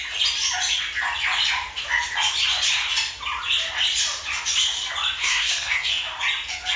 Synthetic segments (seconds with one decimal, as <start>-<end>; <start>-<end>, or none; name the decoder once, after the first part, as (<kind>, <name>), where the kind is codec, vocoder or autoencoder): 5.2-5.9 (codec, SNAC)

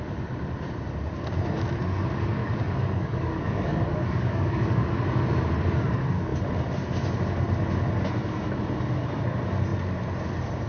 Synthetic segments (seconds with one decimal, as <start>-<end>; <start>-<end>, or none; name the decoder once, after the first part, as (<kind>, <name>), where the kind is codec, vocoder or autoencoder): 2.4-4.9 (codec, DAC)

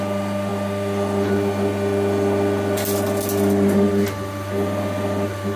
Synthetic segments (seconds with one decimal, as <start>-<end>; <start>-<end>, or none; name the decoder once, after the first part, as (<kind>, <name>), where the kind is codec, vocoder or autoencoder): none

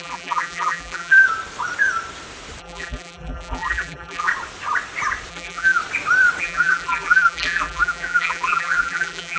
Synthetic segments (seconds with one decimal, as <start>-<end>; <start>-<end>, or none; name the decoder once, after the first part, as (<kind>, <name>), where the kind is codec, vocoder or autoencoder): 0.0-1.2 (vocoder, BigVGAN v2); 2.6-4.3; 5.3-5.8; 6.4-9.4